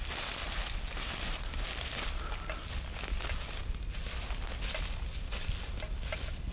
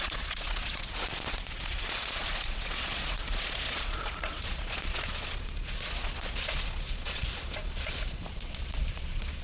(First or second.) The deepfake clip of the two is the second